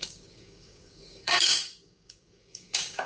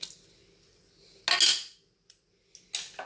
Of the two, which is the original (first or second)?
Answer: second